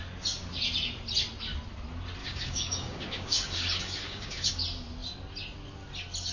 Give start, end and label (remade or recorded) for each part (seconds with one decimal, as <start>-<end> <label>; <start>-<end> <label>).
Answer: 0.0-2.2 recorded; 2.2-4.5 remade; 4.5-6.3 recorded